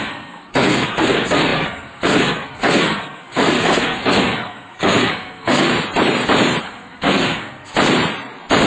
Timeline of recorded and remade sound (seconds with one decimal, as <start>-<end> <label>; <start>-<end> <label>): 0.0-5.7 remade; 5.7-6.6 recorded; 6.6-7.7 remade; 7.7-8.7 recorded